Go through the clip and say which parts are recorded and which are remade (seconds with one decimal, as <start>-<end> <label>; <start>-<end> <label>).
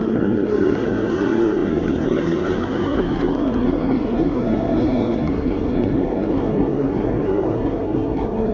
0.0-8.5 remade